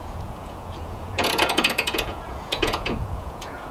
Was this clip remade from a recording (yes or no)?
yes